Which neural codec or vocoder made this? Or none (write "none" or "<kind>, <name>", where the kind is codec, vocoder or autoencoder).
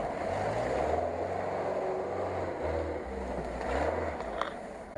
none